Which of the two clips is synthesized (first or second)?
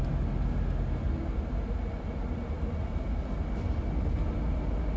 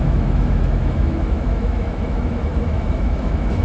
second